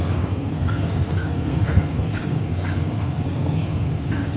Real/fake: fake